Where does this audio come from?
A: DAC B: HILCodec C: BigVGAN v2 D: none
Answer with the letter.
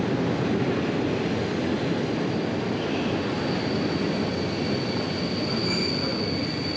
D